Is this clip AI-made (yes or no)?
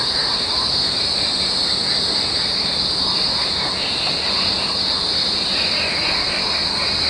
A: no